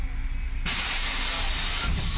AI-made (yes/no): no